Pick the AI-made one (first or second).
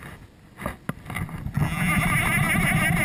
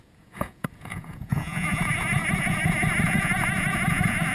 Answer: second